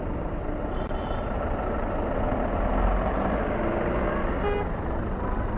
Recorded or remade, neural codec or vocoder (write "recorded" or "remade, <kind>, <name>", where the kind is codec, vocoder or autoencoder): recorded